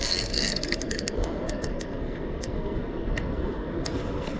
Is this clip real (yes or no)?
no